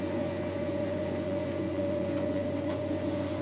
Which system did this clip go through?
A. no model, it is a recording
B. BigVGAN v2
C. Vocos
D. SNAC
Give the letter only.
C